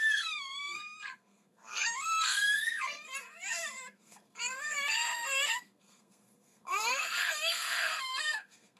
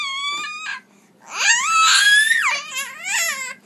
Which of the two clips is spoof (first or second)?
first